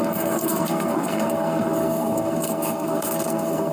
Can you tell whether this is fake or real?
fake